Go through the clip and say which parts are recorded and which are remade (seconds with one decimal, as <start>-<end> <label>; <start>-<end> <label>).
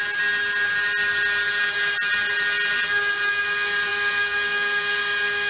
0.0-5.5 recorded